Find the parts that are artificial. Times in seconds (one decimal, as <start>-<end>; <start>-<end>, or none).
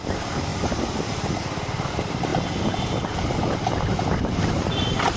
none